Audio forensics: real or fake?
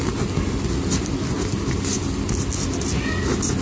real